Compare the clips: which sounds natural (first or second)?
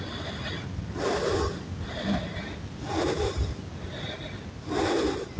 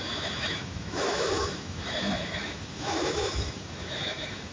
first